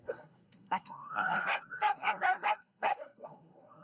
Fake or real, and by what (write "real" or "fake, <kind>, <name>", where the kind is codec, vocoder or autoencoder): fake, codec, SNAC